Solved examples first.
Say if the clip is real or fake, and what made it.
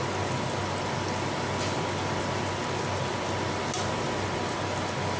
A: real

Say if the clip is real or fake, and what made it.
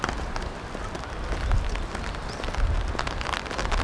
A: real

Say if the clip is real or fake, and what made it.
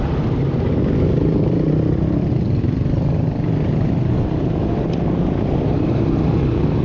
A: real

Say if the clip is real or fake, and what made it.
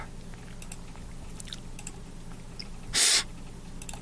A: real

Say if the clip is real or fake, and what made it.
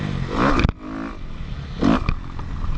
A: real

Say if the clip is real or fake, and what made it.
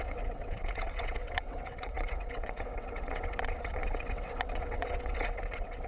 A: fake, vocoder, WaveNeXt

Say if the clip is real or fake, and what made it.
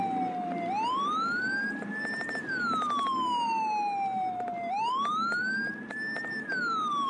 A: real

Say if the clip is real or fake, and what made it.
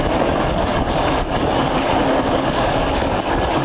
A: fake, codec, DAC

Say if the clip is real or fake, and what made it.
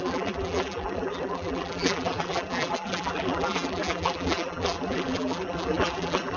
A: fake, vocoder, BigVGAN v2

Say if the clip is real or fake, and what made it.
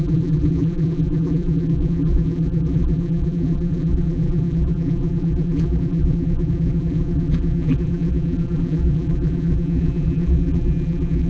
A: fake, vocoder, BigVGAN v2